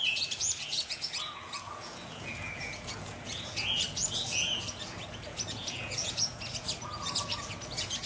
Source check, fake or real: fake